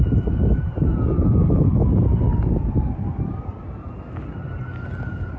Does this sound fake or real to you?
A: real